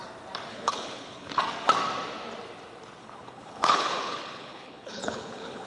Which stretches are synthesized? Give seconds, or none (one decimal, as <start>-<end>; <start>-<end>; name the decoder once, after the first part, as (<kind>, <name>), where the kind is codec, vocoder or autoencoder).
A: 0.5-1.4 (codec, HILCodec); 3.0-5.7